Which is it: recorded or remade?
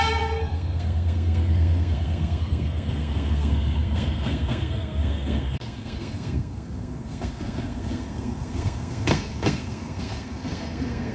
remade